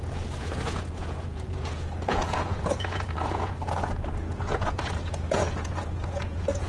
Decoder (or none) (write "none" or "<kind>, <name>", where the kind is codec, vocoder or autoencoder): vocoder, Vocos